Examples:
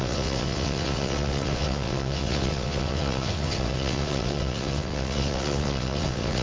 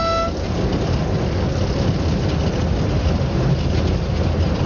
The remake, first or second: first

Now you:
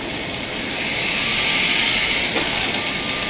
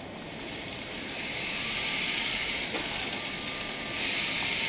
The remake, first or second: second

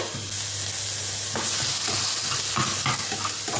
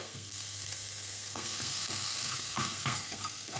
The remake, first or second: second